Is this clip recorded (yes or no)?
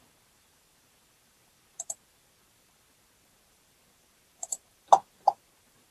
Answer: no